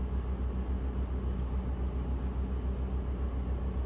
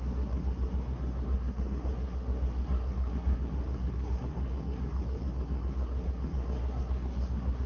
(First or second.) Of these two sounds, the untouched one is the first